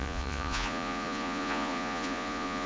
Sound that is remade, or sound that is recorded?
remade